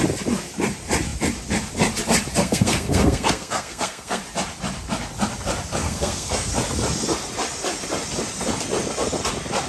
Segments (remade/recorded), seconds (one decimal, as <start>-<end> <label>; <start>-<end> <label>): 0.0-2.4 recorded; 2.4-4.2 remade; 4.2-5.8 recorded; 5.8-6.5 remade; 6.5-9.7 recorded